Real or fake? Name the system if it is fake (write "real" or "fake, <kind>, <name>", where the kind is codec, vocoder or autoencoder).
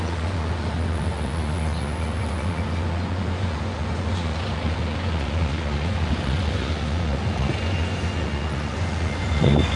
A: fake, vocoder, Vocos